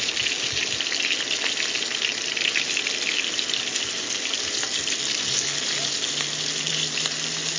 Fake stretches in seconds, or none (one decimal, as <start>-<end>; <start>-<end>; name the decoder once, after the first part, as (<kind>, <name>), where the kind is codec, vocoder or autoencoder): none